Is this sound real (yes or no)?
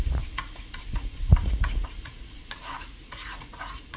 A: no